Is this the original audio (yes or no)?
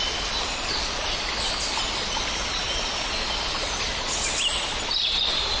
yes